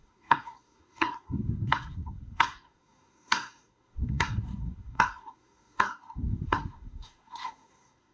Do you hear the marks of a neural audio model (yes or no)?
yes